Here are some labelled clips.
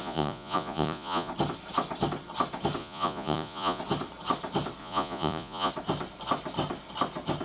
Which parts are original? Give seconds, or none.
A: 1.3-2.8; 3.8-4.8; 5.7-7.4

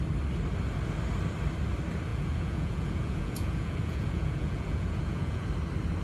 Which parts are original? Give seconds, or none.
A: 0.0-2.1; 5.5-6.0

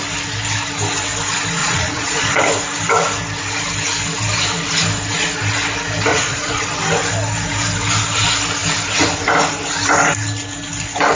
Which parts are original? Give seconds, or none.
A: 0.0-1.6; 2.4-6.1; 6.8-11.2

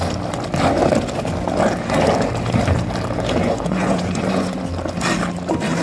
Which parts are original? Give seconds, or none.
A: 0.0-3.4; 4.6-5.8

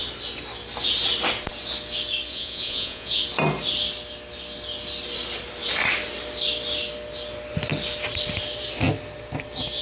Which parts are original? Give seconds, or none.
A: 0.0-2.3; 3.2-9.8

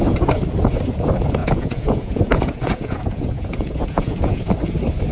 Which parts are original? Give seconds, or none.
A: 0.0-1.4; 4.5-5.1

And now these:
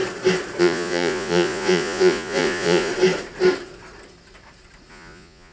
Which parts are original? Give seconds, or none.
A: 0.0-0.6; 2.9-4.9